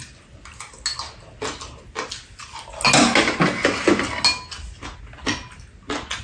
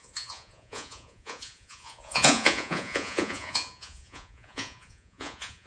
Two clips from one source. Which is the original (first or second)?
first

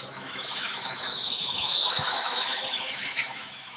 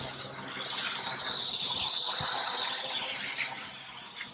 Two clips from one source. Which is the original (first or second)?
second